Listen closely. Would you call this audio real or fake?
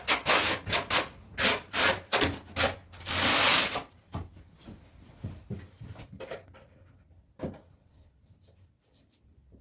real